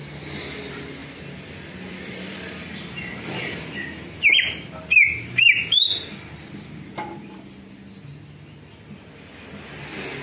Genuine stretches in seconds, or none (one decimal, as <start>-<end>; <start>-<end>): 0.0-1.0; 3.6-10.2